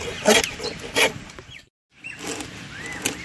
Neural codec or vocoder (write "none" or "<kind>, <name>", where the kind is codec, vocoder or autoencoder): none